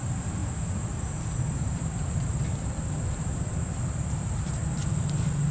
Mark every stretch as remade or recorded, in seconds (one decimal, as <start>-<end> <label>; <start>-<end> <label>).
0.0-0.4 recorded; 0.4-3.7 remade; 3.7-5.5 recorded